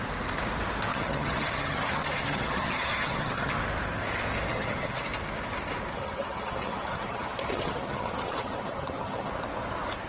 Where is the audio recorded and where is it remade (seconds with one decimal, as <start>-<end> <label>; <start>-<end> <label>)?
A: 0.0-0.9 recorded; 0.9-3.5 remade; 3.5-4.5 recorded; 4.5-5.1 remade; 5.1-5.9 recorded; 5.9-9.3 remade; 9.3-10.1 recorded